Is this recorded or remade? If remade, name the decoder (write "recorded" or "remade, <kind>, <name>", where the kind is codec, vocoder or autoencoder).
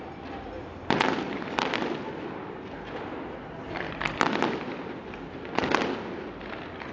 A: recorded